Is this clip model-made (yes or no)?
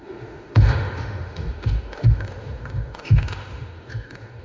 yes